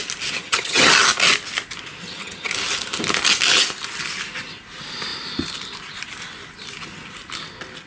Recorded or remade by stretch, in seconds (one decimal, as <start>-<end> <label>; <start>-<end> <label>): 0.0-0.4 recorded; 0.4-0.9 remade; 0.9-2.0 recorded; 2.0-2.5 remade; 2.5-7.9 recorded